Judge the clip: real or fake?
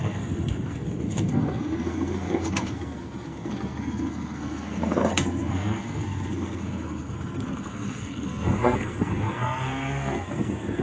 fake